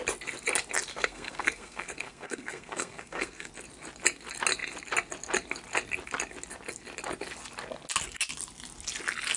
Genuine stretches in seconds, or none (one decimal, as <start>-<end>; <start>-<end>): 0.0-0.9; 3.5-9.4